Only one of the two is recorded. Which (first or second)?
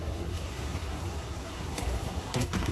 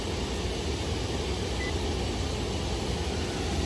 second